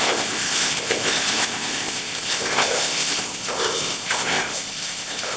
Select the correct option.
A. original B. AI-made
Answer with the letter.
B